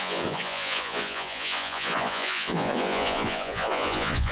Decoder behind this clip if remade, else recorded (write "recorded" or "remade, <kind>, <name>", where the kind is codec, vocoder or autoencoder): remade, vocoder, Vocos